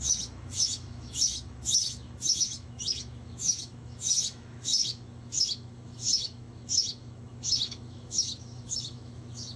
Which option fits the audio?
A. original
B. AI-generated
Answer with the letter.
B